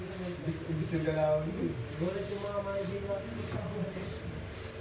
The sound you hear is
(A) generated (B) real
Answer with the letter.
B